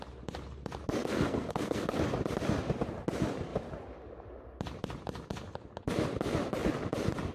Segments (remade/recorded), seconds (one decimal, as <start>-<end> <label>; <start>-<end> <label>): 0.0-1.0 recorded; 1.0-2.0 remade; 2.0-7.3 recorded

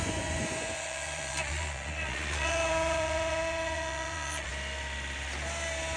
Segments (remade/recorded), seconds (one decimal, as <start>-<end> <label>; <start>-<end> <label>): 0.0-4.5 remade; 4.5-6.0 recorded

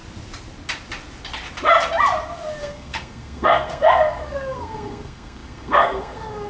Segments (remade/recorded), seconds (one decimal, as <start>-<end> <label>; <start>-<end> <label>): 0.0-2.6 recorded; 2.6-6.5 remade

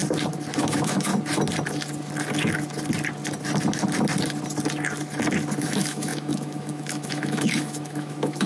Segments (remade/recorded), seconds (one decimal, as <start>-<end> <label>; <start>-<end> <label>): 0.0-0.6 recorded; 0.6-1.1 remade; 1.1-5.6 recorded; 5.6-8.5 remade

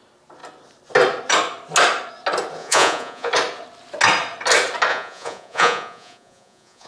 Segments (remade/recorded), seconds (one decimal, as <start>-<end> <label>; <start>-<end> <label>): 0.0-2.6 recorded; 2.6-3.3 remade; 3.3-4.9 recorded; 4.9-6.9 remade

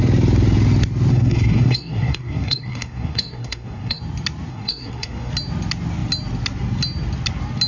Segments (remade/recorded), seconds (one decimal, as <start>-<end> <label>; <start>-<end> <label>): 0.0-1.1 recorded; 1.1-4.0 remade; 4.0-4.5 recorded; 4.5-5.3 remade; 5.3-7.7 recorded

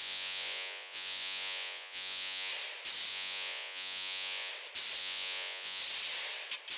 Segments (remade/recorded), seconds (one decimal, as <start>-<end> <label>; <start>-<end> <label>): 0.0-2.5 remade; 2.5-3.1 recorded; 3.1-4.5 remade; 4.5-5.0 recorded; 5.0-5.8 remade; 5.8-6.8 recorded

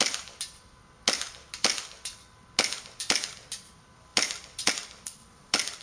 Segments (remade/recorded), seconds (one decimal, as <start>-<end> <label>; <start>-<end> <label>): 0.0-5.8 recorded